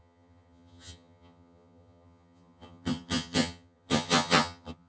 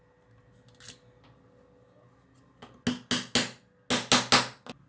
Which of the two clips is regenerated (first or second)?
first